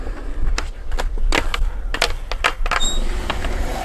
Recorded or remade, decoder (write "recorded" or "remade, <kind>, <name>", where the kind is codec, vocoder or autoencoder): recorded